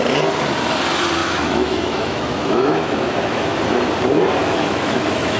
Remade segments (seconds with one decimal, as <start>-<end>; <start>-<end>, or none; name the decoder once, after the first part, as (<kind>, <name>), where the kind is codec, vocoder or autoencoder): 1.2-3.6 (autoencoder, DAC-VAE); 4.4-5.4